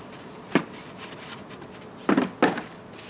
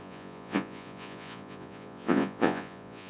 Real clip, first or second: first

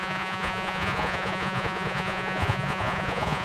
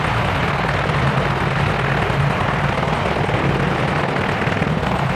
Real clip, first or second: second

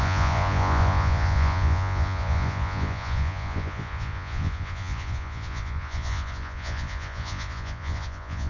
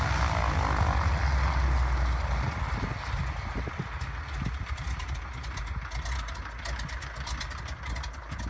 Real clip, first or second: second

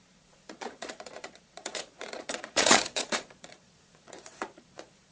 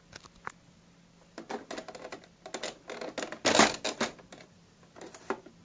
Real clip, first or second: second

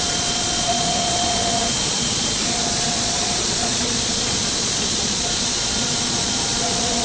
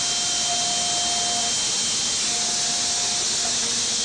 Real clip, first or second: second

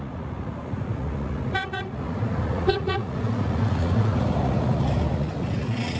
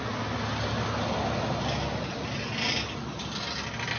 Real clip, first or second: second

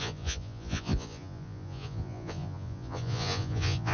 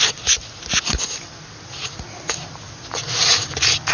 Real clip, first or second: second